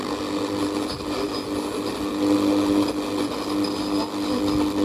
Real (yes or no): yes